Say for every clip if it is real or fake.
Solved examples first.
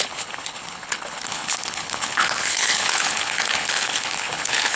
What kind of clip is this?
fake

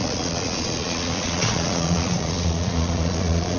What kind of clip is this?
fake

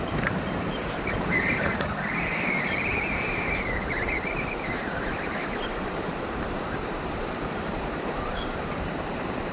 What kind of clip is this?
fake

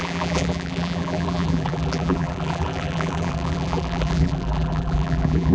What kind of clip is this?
fake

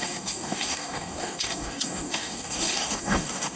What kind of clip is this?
fake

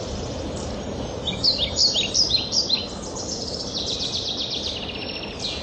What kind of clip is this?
real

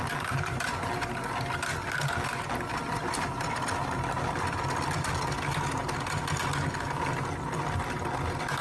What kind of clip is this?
real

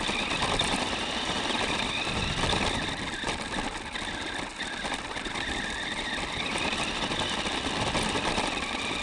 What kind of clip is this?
fake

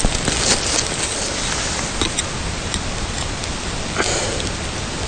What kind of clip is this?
real